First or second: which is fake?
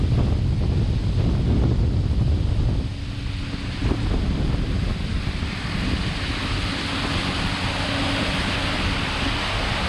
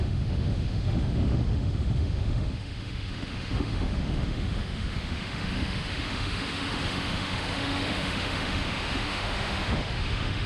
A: second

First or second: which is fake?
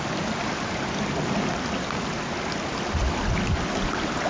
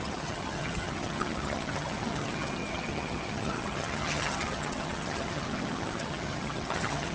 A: second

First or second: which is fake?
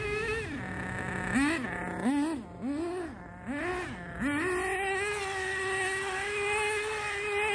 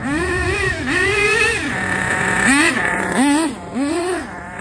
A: second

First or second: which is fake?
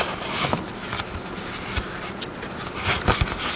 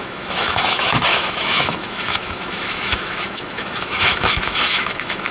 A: second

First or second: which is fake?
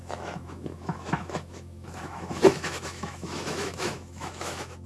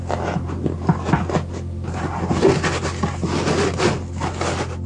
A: first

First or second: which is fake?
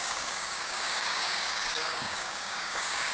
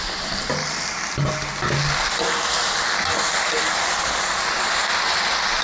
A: first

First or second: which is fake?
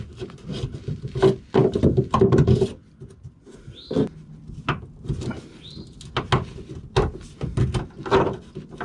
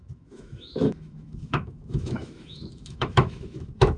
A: second